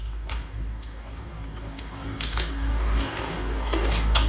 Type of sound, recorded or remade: remade